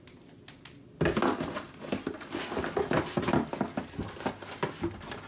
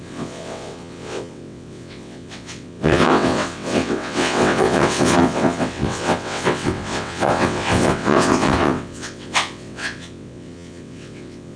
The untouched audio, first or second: first